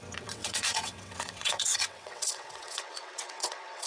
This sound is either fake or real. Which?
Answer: fake